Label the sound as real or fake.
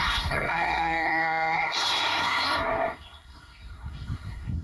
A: fake